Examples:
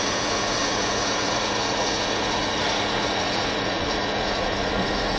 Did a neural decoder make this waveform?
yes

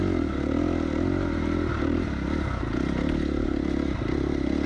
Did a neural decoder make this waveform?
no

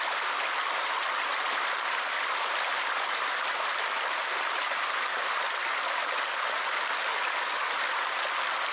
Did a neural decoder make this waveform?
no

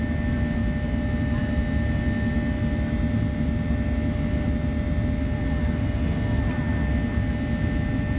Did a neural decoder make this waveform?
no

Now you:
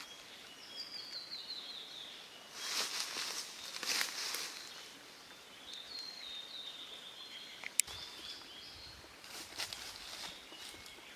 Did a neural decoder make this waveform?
no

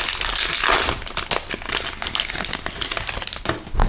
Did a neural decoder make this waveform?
no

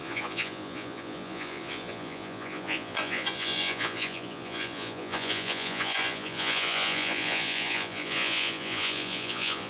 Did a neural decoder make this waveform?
yes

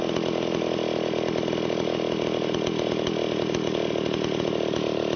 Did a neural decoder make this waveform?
no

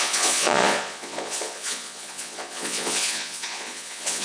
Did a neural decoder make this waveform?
yes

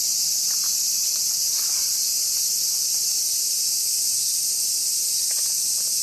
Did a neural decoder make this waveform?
no